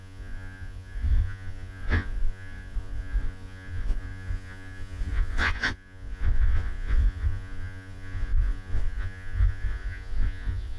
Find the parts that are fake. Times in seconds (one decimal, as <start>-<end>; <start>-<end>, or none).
0.0-10.8